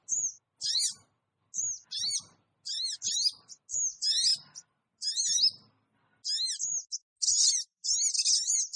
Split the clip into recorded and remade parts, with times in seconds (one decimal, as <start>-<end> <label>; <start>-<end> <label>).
0.0-8.8 recorded